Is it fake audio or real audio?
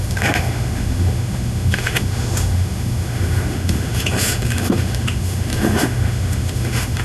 fake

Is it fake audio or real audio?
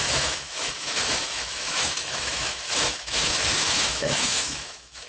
fake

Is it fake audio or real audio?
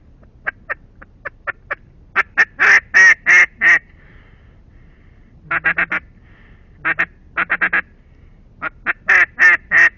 real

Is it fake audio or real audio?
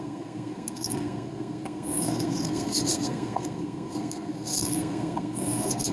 fake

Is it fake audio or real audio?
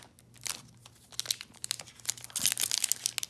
real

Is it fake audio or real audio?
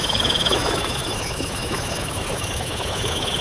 fake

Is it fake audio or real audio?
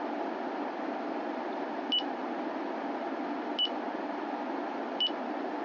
real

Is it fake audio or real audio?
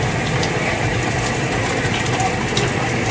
real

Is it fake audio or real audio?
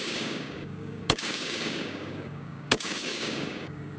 fake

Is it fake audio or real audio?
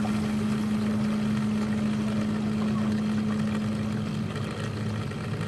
real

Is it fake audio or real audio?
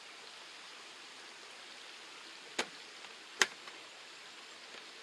real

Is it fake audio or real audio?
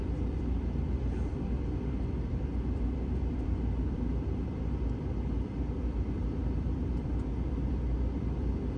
fake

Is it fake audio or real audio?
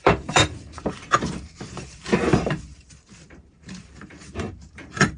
fake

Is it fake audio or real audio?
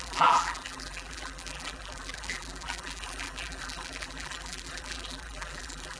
fake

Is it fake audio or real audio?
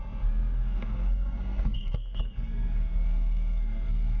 fake